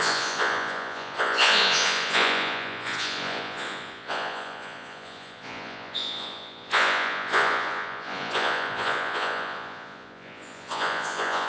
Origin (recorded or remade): remade